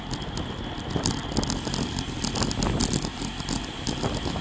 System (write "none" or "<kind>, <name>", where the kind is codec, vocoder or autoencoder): none